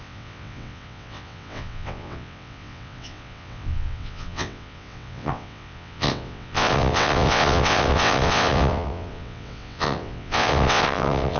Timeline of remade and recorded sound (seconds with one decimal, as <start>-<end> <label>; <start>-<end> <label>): 0.0-11.4 remade